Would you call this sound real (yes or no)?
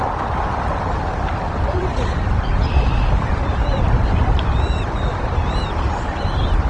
no